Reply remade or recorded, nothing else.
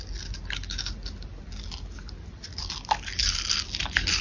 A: recorded